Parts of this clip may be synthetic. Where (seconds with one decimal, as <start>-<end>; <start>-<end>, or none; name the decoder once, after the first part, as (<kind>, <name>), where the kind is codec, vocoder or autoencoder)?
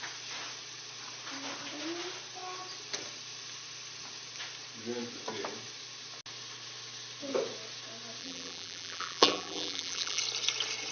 8.2-10.2 (vocoder, BigVGAN v2)